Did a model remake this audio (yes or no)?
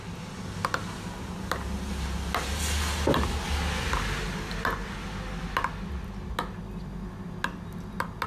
no